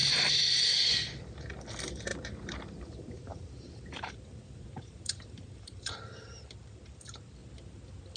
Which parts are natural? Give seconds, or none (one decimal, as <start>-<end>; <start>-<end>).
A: 0.6-2.1; 5.9-8.2